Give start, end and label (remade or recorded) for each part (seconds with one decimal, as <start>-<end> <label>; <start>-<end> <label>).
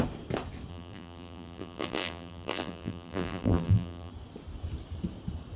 0.0-0.7 recorded; 0.7-4.1 remade; 4.1-5.6 recorded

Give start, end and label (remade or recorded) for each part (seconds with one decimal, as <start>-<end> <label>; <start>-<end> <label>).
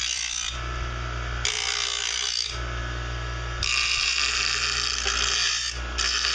0.0-2.8 remade; 2.8-5.6 recorded; 5.6-6.3 remade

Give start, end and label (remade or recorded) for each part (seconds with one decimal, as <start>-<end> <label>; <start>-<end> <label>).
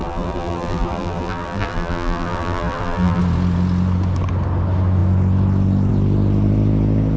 0.0-3.2 remade; 3.2-7.2 recorded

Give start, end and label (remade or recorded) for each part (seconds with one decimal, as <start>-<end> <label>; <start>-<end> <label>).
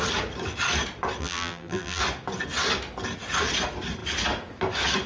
0.0-1.2 recorded; 1.2-2.0 remade; 2.0-5.1 recorded